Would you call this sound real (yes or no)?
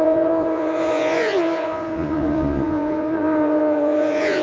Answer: no